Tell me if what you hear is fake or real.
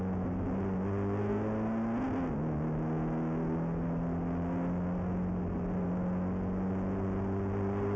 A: real